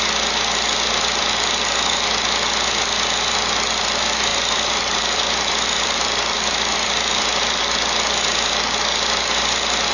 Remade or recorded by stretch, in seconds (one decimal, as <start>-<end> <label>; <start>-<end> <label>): 0.0-4.3 recorded; 4.3-7.6 remade; 7.6-9.9 recorded